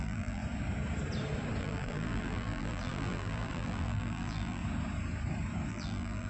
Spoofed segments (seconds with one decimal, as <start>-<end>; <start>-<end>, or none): 0.0-0.4; 1.6-4.6; 5.7-6.3

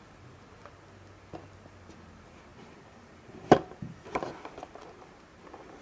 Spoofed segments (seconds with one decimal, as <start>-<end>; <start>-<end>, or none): 2.5-4.3

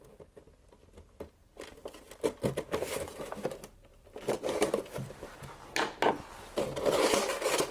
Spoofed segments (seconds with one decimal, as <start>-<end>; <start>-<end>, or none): 1.8-2.4; 3.9-6.1

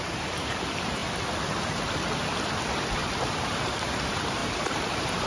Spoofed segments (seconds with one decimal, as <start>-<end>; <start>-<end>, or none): 0.0-1.0; 3.4-5.3

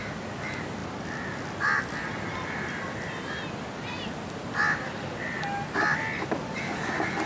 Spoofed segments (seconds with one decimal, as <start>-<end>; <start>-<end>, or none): 0.8-2.2

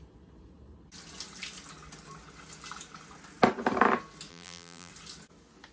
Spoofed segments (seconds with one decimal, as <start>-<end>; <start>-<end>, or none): 4.3-4.9

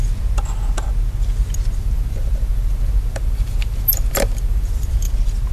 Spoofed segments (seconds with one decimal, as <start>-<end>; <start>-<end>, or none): 1.8-5.1

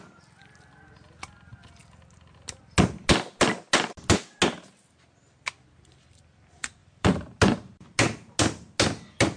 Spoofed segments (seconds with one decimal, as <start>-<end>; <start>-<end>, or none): 6.8-7.4